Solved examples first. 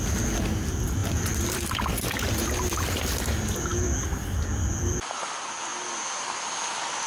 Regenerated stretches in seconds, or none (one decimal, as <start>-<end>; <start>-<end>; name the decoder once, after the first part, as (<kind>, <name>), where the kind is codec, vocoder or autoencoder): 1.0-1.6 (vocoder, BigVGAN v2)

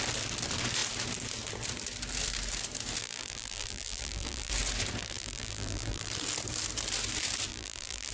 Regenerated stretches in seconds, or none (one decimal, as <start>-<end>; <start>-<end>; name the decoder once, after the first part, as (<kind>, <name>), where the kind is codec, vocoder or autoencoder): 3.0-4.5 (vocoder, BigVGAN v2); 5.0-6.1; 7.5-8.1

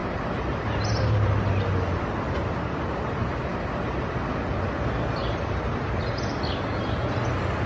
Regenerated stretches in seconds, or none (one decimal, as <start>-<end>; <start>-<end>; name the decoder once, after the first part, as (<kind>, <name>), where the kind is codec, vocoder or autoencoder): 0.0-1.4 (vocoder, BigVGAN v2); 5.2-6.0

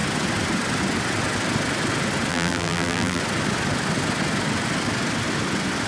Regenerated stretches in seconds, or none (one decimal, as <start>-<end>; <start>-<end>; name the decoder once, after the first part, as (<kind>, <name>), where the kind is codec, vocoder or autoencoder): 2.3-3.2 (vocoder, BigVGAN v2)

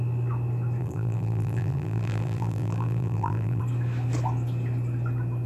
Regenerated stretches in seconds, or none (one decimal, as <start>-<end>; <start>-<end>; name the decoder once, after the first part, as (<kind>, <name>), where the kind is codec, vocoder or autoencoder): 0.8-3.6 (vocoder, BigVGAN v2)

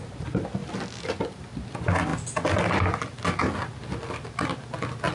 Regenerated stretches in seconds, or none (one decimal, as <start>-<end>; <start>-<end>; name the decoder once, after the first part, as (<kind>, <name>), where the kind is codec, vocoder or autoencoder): none

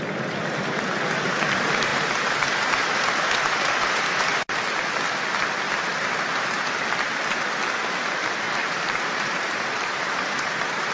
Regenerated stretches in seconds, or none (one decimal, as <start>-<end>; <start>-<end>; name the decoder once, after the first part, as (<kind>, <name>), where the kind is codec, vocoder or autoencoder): 1.9-4.0 (vocoder, BigVGAN v2); 8.6-10.9

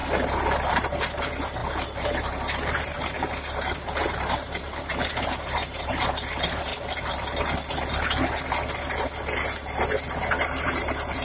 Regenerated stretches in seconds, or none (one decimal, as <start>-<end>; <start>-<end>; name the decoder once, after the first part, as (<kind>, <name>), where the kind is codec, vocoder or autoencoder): 0.7-6.7 (vocoder, BigVGAN v2); 10.6-11.2